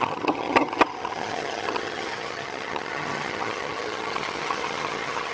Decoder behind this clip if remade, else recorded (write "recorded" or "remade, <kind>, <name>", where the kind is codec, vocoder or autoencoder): remade, vocoder, HiFi-GAN